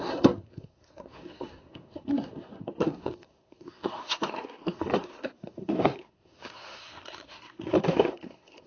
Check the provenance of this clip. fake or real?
fake